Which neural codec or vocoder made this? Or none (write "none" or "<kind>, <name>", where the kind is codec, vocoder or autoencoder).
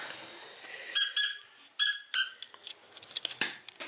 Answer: none